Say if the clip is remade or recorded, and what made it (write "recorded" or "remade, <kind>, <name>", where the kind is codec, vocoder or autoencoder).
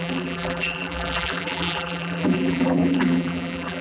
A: remade, vocoder, BigVGAN v2